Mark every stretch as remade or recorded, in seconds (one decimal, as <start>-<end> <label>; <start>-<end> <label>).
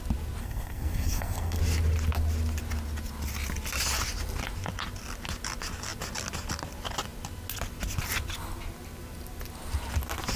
0.0-0.4 recorded; 0.4-1.6 remade; 1.6-10.4 recorded